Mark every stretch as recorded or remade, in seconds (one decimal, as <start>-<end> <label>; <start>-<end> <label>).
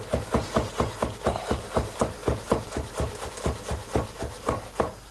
0.0-5.1 recorded